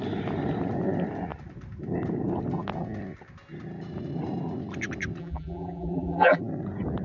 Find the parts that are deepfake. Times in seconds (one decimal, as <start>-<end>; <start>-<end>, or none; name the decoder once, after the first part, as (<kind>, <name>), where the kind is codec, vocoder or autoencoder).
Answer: 5.2-6.4 (vocoder, BigVGAN v2)